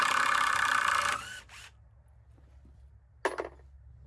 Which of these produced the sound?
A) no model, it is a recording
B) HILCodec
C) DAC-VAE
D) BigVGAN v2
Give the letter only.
A